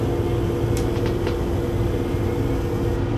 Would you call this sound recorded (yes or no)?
yes